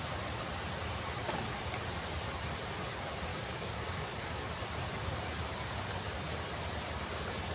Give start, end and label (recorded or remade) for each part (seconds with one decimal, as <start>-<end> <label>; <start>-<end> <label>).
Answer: 0.0-3.3 recorded; 3.3-4.5 remade; 4.5-7.5 recorded